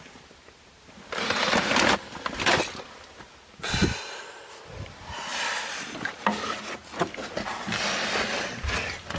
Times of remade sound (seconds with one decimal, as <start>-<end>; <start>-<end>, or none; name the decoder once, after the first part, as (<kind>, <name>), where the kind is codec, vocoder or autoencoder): none